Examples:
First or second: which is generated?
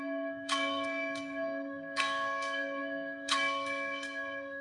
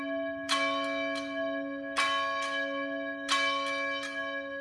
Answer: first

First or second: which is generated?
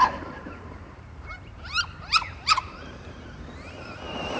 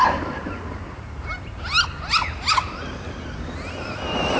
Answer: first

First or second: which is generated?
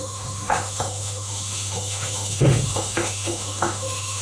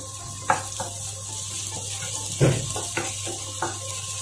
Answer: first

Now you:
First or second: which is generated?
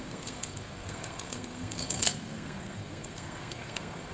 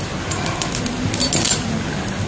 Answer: first